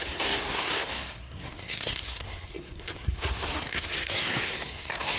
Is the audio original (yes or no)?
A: no